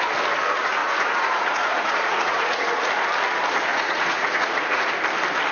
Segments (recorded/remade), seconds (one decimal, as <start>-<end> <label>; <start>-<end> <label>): 0.0-0.8 recorded; 0.8-2.9 remade; 2.9-3.7 recorded; 3.7-4.9 remade; 4.9-5.5 recorded